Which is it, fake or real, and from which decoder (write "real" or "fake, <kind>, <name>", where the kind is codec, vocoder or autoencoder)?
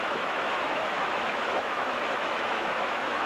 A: fake, autoencoder, DAC-VAE